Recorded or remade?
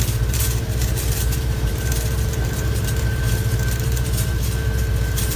remade